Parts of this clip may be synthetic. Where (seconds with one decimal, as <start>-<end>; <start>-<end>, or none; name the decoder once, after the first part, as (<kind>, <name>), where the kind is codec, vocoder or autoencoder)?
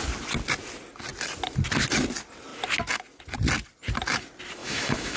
4.6-5.2 (autoencoder, DAC-VAE)